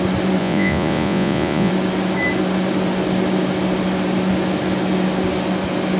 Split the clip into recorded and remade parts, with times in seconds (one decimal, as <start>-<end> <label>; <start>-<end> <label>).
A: 0.0-0.4 recorded; 0.4-1.7 remade; 1.7-6.0 recorded